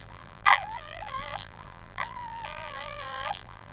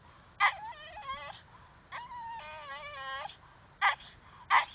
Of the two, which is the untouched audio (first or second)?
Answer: second